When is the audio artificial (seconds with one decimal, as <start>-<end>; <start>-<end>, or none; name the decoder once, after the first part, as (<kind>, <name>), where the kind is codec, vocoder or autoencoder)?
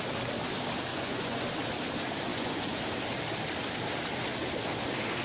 0.9-1.4 (vocoder, Vocos); 2.3-2.8